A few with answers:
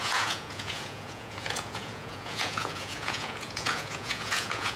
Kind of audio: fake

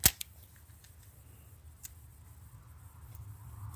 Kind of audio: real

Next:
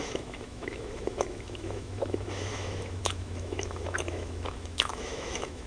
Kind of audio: fake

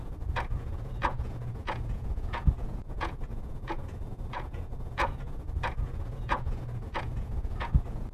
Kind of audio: fake